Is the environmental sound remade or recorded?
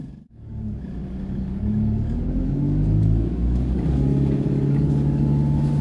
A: remade